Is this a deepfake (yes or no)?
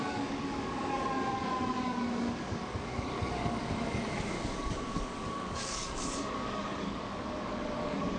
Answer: yes